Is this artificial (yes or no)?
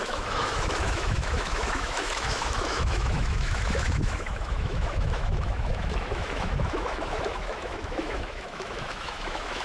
yes